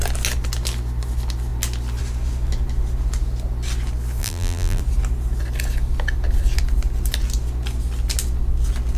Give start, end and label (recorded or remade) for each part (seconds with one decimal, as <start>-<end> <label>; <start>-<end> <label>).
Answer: 0.0-4.2 recorded; 4.2-4.8 remade; 4.8-9.0 recorded